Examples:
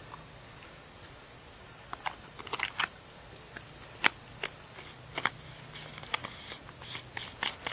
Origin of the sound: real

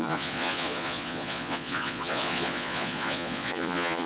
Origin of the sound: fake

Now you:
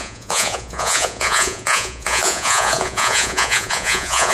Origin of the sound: fake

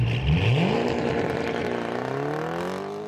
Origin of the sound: real